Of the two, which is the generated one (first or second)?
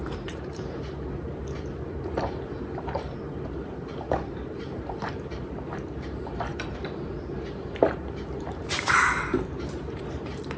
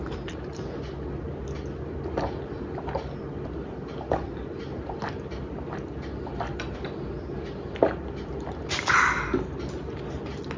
first